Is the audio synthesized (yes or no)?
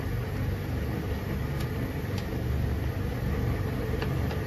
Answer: no